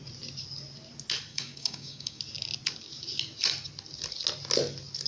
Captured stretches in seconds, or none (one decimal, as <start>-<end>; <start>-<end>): 0.0-1.3; 2.2-5.1